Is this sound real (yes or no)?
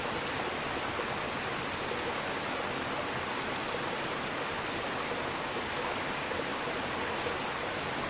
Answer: yes